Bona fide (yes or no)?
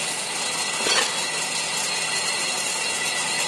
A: yes